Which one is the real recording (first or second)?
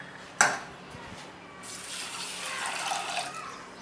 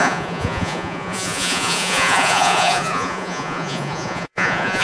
first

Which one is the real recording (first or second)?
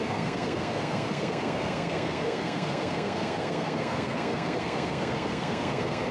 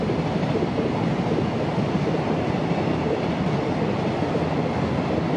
second